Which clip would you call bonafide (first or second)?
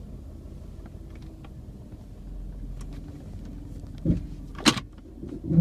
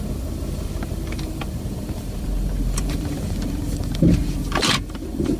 first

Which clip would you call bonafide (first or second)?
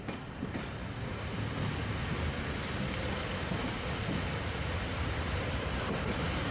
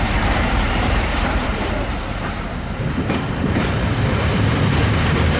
first